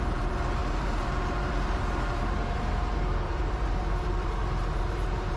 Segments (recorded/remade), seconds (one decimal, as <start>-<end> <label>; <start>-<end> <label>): 0.0-5.4 remade

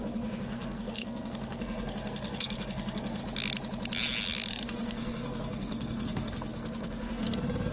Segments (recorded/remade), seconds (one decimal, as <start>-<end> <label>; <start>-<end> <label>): 0.0-3.2 remade; 3.2-4.5 recorded; 4.5-7.7 remade

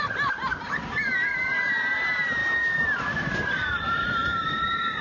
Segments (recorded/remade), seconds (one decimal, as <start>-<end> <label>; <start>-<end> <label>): 0.0-0.5 remade; 0.5-1.6 recorded; 1.6-2.4 remade; 2.4-3.0 recorded; 3.0-5.0 remade

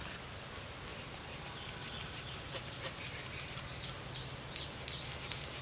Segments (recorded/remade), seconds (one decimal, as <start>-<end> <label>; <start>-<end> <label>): 0.0-0.9 recorded; 0.9-2.7 remade; 2.7-5.6 recorded

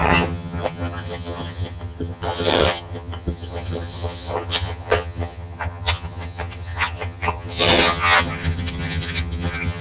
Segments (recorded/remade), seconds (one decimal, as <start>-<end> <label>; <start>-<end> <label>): 0.0-9.8 remade